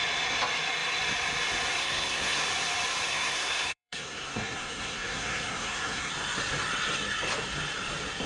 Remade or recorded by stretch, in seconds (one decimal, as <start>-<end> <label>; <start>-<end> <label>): 0.0-1.8 recorded; 1.8-2.4 remade; 2.4-3.1 recorded; 3.1-6.1 remade; 6.1-8.3 recorded